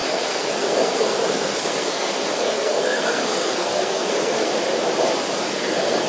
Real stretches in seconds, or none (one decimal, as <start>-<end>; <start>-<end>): 4.5-5.5